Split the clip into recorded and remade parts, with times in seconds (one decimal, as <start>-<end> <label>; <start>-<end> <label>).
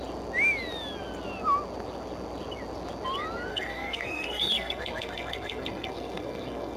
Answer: 0.0-3.5 recorded; 3.5-6.8 remade